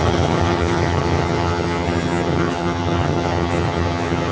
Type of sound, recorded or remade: remade